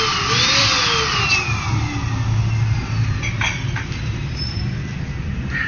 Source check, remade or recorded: recorded